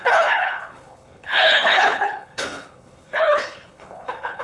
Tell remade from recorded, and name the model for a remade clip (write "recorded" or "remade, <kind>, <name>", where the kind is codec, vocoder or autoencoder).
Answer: remade, codec, HILCodec